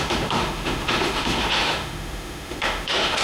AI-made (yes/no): yes